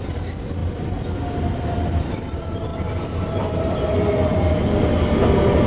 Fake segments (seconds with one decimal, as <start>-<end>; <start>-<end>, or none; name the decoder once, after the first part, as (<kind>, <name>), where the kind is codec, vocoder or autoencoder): none

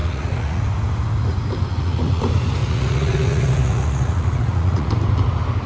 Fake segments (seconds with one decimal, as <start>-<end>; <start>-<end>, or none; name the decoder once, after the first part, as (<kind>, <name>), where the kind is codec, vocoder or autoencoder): 0.0-0.6 (vocoder, Vocos); 1.7-2.2; 2.6-4.9

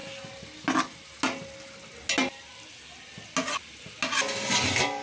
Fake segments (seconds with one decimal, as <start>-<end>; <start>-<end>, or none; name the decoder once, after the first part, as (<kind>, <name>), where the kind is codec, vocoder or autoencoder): none

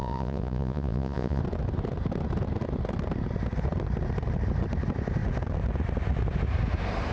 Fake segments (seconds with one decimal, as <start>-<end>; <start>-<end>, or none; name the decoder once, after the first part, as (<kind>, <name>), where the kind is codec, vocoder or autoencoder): 0.0-1.4 (vocoder, Vocos)

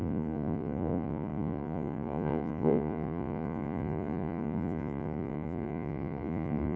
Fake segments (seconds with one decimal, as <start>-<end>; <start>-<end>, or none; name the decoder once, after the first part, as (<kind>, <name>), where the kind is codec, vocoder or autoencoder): 0.0-6.8 (vocoder, Vocos)

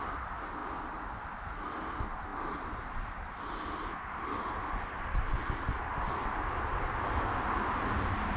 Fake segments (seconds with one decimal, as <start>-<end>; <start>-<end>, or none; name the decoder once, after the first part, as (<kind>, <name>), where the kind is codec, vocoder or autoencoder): none

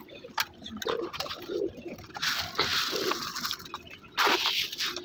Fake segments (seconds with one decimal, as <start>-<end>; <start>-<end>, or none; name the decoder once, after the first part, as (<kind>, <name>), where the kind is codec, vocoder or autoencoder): none